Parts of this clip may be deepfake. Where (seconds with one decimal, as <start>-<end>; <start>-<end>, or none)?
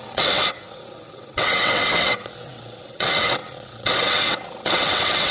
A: 0.0-5.3